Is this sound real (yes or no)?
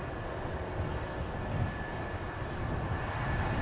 yes